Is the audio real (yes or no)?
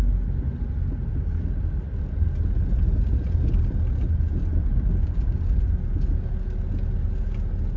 yes